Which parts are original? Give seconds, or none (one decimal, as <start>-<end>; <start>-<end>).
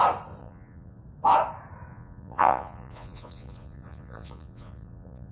0.0-0.4; 1.0-1.9